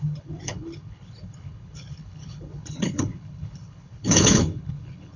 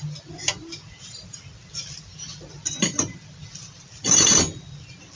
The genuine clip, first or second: second